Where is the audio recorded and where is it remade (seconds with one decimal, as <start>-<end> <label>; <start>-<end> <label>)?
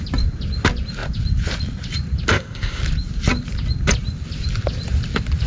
0.0-2.3 recorded; 2.3-2.8 remade; 2.8-5.5 recorded